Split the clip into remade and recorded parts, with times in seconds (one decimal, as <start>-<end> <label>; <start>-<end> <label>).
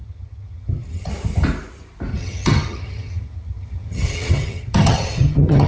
0.0-1.1 remade; 1.1-2.1 recorded; 2.1-5.7 remade